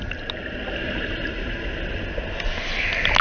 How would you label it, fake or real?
real